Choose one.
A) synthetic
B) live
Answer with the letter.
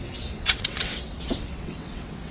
A